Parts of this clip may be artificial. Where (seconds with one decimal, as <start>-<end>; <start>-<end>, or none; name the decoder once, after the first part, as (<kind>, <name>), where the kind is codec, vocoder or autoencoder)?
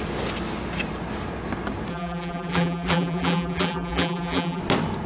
1.9-4.6 (vocoder, BigVGAN v2)